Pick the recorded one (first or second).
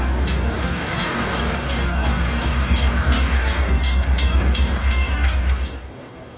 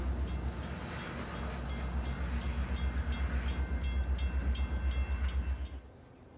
second